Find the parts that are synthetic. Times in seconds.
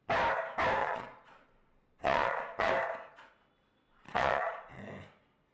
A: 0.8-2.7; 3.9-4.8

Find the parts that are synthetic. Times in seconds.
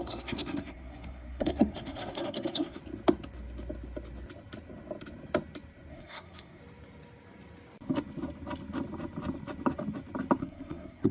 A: 0.0-2.8; 5.9-6.6; 10.4-11.1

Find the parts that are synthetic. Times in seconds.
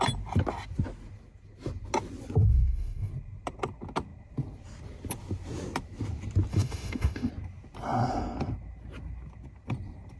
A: 2.4-3.1; 6.5-7.3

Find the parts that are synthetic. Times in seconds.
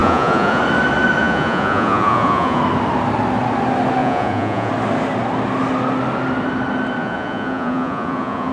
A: 0.0-0.6; 1.2-2.6; 4.0-4.7; 7.0-8.5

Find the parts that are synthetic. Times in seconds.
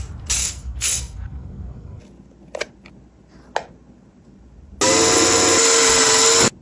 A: 0.4-2.0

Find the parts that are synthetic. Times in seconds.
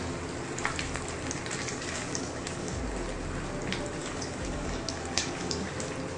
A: 1.7-2.8; 4.0-5.7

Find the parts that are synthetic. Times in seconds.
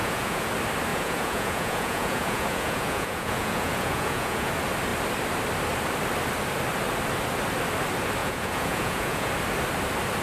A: 0.0-0.5; 0.9-4.5; 8.2-9.3